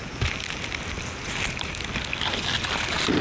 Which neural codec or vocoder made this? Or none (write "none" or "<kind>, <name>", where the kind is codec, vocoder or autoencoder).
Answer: none